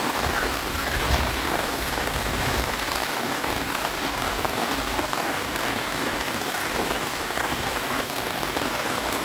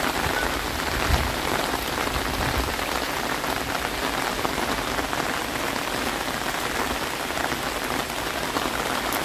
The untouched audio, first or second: second